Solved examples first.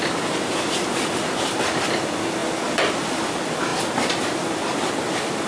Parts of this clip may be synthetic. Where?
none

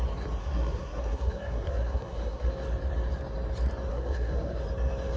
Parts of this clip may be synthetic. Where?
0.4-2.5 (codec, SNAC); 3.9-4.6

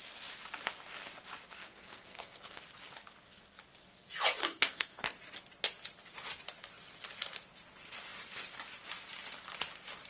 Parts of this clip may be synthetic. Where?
1.6-2.6 (codec, SNAC); 4.4-5.1

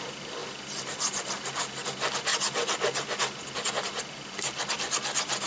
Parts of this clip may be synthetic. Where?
none

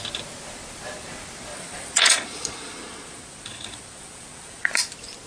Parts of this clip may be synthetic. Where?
1.5-4.7 (vocoder, Vocos)

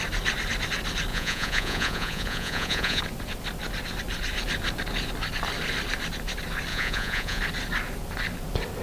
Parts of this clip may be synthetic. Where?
1.1-3.0 (vocoder, Vocos); 6.7-7.4